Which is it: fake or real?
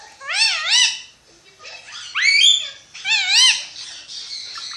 real